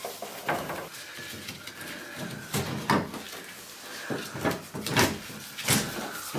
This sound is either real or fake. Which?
real